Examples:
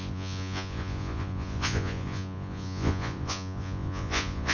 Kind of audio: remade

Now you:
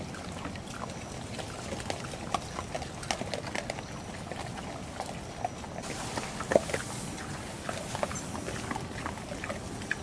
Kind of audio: recorded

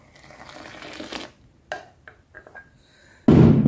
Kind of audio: recorded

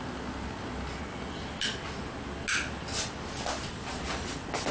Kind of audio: recorded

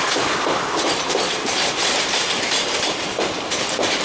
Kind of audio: remade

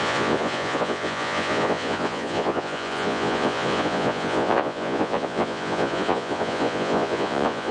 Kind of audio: remade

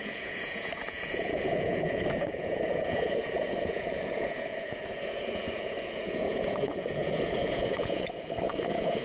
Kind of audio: remade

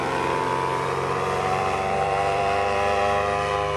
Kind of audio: remade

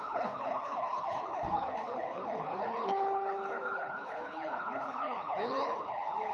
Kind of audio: remade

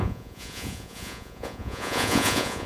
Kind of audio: remade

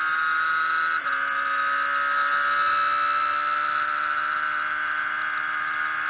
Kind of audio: recorded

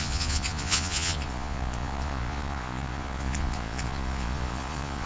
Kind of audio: remade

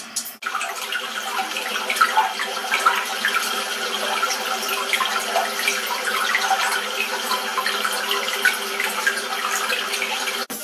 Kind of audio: recorded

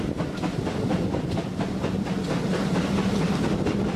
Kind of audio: recorded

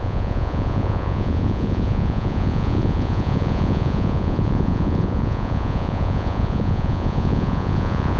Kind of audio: remade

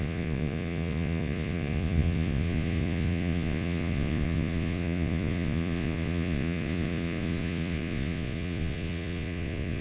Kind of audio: remade